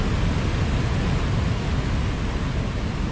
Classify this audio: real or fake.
real